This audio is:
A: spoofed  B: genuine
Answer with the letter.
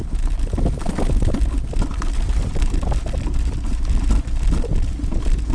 B